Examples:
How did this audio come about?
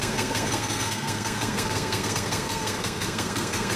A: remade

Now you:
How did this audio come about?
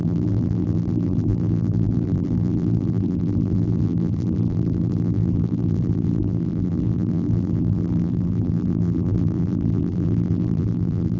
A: remade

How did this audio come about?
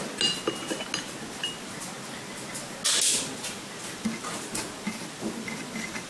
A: recorded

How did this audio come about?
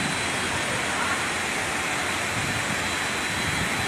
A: recorded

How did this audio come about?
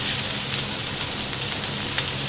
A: recorded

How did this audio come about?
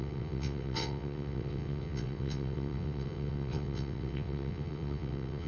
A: remade